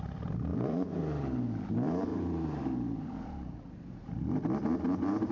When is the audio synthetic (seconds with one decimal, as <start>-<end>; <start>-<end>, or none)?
0.5-1.0; 2.1-4.1